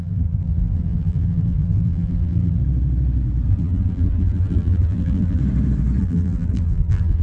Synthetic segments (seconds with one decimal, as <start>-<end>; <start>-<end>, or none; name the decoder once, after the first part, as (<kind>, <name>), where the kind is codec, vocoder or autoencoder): 0.0-2.6 (vocoder, BigVGAN v2); 3.5-5.4; 6.0-7.2